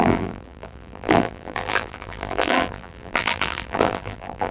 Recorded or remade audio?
remade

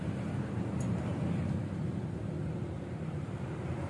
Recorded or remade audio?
remade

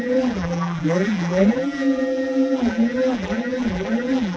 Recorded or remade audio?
remade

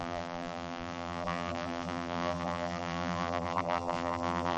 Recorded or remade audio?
remade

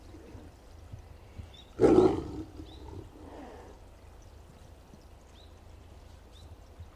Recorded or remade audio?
remade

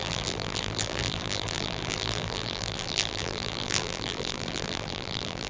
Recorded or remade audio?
remade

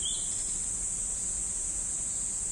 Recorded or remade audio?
recorded